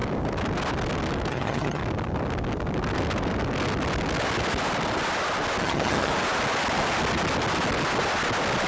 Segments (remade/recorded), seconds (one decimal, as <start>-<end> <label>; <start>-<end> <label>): 0.0-1.3 recorded; 1.3-1.8 remade; 1.8-5.6 recorded; 5.6-6.1 remade; 6.1-8.7 recorded